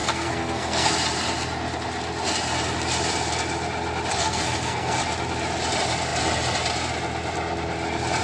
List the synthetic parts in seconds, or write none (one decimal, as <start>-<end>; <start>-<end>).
0.0-0.9; 4.1-5.0